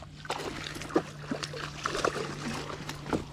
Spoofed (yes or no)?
no